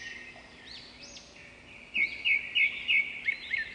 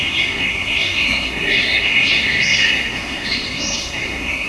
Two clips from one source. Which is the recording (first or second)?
first